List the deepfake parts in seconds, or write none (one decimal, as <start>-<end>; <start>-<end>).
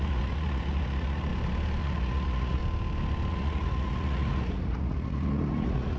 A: 0.0-1.3; 1.8-2.6; 3.3-6.0